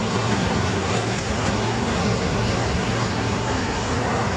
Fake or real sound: fake